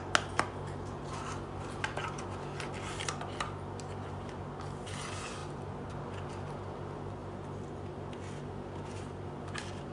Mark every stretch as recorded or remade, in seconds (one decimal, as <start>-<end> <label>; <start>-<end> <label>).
0.0-9.9 recorded